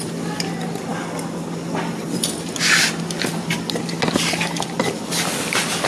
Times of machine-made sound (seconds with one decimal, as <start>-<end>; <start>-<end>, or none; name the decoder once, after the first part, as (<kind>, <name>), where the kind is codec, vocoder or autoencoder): none